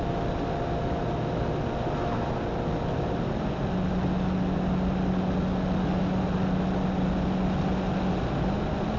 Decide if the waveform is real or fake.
real